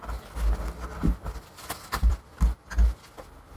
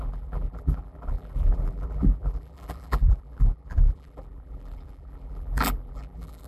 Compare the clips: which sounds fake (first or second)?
second